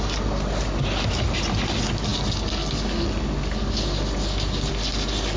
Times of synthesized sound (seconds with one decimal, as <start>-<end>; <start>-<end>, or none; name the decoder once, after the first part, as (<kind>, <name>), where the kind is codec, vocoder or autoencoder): none